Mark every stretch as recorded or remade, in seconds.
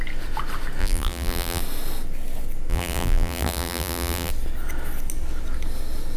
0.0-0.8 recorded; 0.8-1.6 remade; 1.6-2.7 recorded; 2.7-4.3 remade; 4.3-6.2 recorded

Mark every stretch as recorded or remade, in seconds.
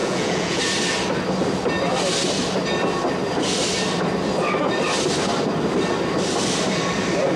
0.0-0.6 remade; 0.6-7.4 recorded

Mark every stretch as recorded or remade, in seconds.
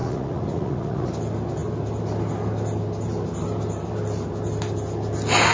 0.0-1.1 remade; 1.1-5.5 recorded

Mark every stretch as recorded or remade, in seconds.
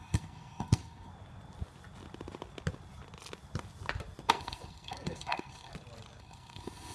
0.0-1.1 remade; 1.1-4.3 recorded; 4.3-5.7 remade; 5.7-6.2 recorded; 6.2-6.9 remade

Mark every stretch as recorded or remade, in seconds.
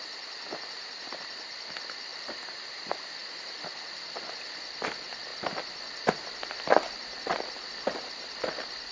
0.0-2.1 recorded; 2.1-2.8 remade; 2.8-8.9 recorded